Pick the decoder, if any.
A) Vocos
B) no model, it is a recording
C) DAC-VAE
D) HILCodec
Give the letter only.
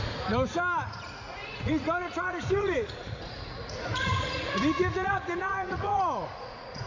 A